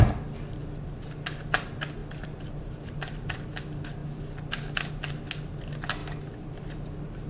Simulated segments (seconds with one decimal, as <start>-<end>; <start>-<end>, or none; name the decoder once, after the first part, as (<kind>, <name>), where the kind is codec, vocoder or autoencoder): 2.0-2.9 (vocoder, BigVGAN v2)